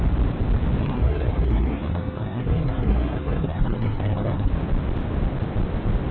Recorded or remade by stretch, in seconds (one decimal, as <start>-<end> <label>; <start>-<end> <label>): 0.0-0.8 recorded; 0.8-4.5 remade; 4.5-6.1 recorded